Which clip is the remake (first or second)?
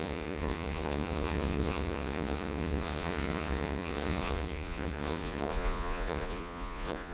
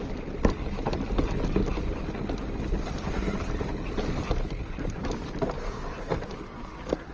first